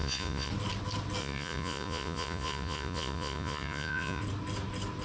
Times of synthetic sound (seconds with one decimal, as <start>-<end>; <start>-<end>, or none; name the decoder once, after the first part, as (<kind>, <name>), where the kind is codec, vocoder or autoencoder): 0.0-0.5 (vocoder, Vocos); 1.2-4.2